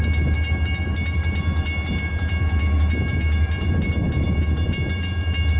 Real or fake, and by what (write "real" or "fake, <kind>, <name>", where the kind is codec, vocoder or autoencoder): real